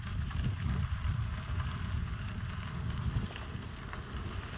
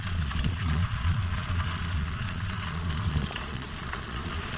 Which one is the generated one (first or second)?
second